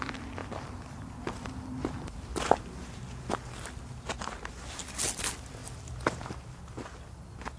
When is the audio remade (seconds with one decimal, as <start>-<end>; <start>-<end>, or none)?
none